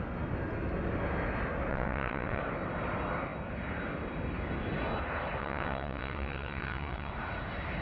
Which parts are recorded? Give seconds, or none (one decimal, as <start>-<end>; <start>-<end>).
0.0-1.7; 2.4-5.4; 7.1-7.8